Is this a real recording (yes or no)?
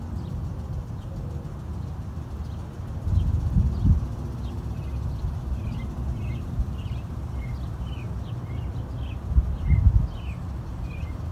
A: yes